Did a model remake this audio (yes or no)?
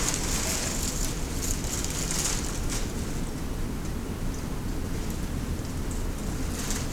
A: no